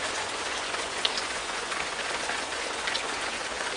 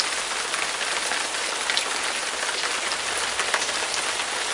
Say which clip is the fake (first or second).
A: first